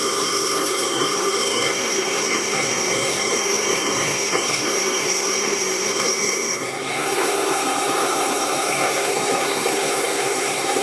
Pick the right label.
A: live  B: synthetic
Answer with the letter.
B